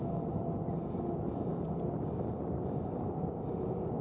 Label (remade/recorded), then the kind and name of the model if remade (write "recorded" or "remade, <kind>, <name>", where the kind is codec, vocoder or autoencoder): recorded